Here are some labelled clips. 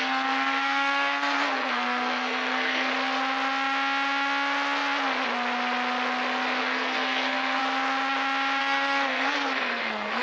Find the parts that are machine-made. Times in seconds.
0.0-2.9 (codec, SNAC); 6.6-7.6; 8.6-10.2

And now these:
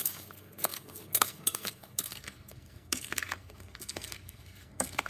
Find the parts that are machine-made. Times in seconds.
0.0-5.1 (codec, SNAC)

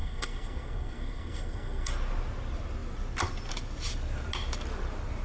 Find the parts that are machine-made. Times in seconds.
0.0-1.9 (codec, SNAC)